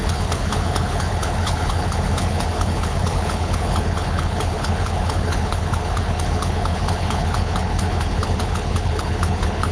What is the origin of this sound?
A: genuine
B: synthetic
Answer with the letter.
B